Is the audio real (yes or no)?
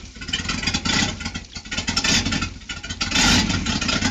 yes